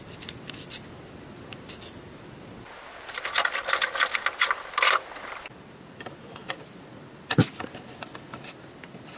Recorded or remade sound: recorded